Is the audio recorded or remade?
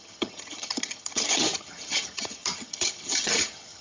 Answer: remade